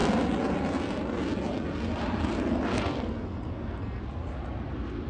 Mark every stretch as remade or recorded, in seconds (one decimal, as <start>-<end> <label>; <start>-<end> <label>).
0.0-2.7 recorded; 2.7-4.0 remade; 4.0-5.1 recorded